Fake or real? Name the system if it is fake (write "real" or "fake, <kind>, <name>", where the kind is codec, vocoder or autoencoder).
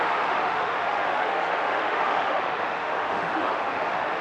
fake, autoencoder, DAC-VAE